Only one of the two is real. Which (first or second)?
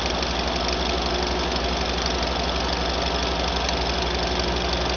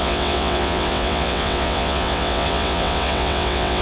first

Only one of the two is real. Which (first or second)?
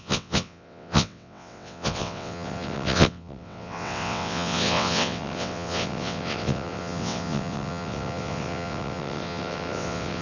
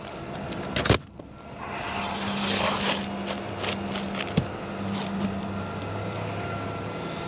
second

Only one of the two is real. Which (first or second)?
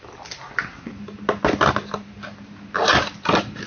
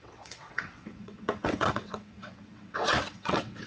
first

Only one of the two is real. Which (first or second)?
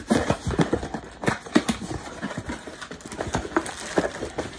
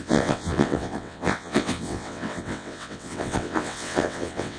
first